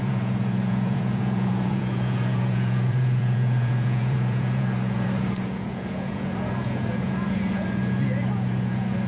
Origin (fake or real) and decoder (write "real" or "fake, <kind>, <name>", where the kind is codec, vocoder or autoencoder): fake, vocoder, Vocos